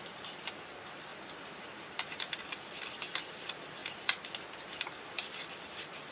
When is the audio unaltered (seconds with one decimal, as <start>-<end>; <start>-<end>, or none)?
0.0-1.1; 2.4-3.8; 4.3-6.1